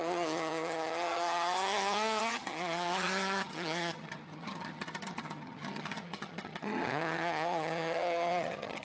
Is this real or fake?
fake